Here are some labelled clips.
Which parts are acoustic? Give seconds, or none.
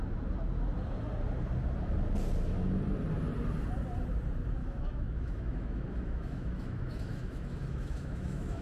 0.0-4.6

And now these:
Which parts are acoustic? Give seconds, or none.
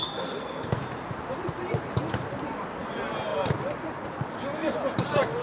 0.8-5.4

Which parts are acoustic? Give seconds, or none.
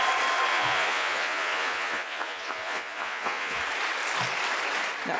0.0-0.5; 3.6-5.2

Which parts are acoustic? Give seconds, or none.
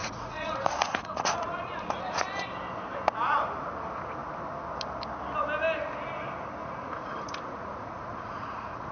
2.2-6.6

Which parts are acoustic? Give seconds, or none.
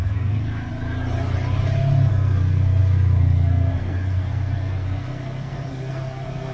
0.7-2.1